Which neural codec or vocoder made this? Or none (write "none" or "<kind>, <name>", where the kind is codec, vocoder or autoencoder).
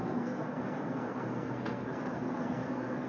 codec, SNAC